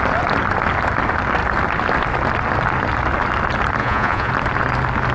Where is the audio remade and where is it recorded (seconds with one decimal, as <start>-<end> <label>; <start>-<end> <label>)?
0.0-3.8 recorded; 3.8-4.3 remade; 4.3-5.1 recorded